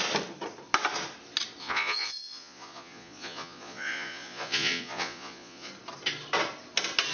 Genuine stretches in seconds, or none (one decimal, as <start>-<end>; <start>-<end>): 0.0-1.6; 5.7-7.1